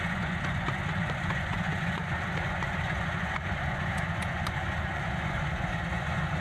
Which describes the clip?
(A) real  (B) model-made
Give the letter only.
B